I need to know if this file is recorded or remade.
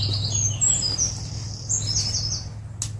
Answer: recorded